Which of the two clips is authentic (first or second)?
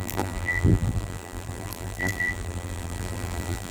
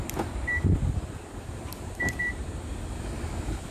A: second